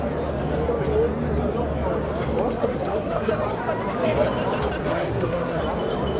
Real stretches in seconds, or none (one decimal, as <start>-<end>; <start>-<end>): 0.0-2.6; 3.3-4.8; 5.6-6.2